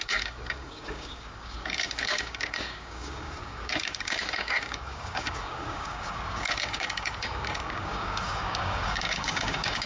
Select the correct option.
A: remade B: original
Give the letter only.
A